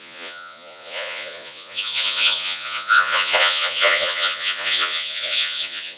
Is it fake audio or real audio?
fake